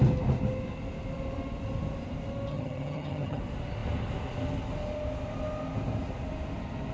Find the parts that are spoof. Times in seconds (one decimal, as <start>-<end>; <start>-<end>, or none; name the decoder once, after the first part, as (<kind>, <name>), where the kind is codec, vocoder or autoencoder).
2.5-3.4 (vocoder, HiFi-GAN)